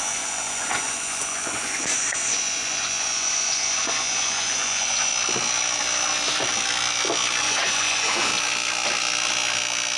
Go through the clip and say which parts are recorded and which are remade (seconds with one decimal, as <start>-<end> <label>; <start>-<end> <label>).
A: 0.0-5.1 remade; 5.1-7.4 recorded; 7.4-8.3 remade; 8.3-10.0 recorded